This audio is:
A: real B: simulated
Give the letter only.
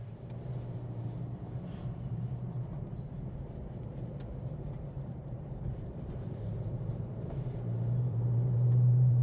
B